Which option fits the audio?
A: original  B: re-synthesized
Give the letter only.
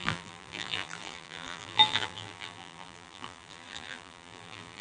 B